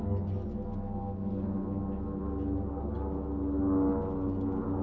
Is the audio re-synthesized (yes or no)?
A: no